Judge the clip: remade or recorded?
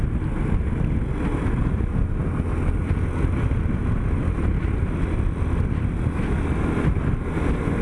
recorded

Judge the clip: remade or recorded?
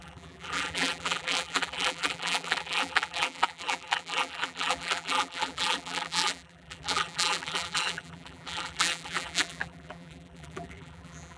remade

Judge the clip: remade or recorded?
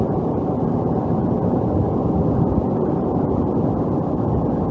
recorded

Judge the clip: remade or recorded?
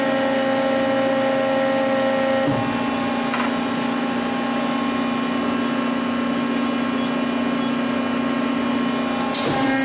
recorded